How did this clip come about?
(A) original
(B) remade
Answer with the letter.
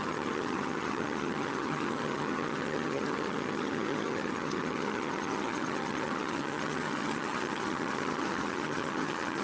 B